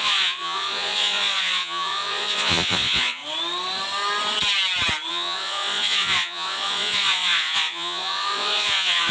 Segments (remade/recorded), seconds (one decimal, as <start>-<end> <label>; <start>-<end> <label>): 0.0-3.2 remade; 3.2-5.1 recorded; 5.1-9.1 remade